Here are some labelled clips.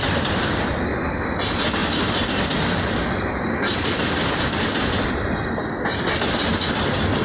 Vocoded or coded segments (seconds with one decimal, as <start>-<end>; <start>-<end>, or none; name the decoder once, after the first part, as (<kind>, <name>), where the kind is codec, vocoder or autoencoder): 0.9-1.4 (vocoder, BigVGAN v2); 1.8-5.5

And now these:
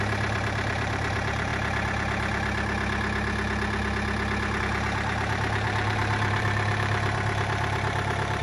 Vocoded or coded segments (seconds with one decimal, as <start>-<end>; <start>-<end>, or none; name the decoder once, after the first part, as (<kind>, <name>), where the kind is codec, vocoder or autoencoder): 0.0-1.5 (vocoder, BigVGAN v2); 4.6-8.4

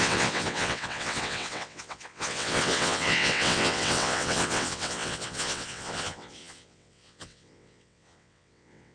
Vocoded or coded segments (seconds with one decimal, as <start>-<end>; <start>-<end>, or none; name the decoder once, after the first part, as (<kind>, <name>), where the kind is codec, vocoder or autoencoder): 0.0-8.9 (vocoder, WaveNeXt)

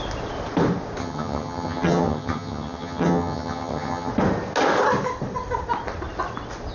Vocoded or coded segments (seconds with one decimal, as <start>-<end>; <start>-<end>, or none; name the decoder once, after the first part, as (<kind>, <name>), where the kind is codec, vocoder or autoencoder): 1.0-4.1 (vocoder, HiFi-GAN)

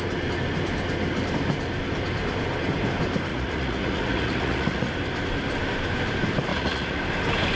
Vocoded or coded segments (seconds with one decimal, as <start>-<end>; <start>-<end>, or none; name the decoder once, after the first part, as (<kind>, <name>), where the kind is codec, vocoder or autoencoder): 3.3-4.9 (vocoder, Vocos); 6.5-7.0

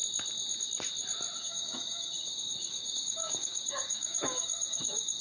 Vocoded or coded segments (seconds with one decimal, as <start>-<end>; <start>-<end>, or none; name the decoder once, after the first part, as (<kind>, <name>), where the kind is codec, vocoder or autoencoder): 1.4-5.2 (codec, DAC)

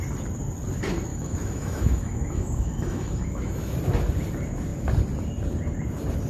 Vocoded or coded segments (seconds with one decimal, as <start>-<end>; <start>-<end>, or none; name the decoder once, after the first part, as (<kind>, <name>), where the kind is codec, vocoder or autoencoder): 1.1-3.7 (autoencoder, DAC-VAE)

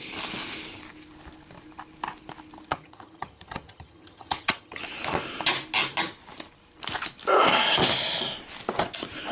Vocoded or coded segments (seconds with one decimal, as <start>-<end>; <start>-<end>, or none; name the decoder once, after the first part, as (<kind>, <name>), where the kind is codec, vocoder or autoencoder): 2.7-4.8 (vocoder, HiFi-GAN)